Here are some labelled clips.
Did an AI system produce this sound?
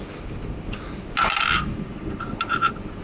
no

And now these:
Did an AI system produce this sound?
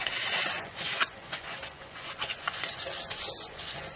yes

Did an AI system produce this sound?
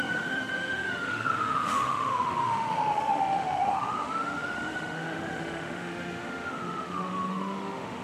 yes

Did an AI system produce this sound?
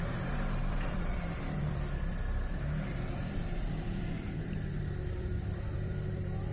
yes